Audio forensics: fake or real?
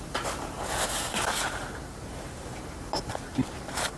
fake